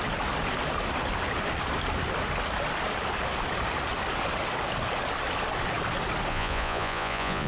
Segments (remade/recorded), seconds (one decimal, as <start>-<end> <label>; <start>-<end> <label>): 0.0-6.3 recorded; 6.3-7.5 remade